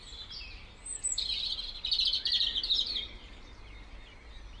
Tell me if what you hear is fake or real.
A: real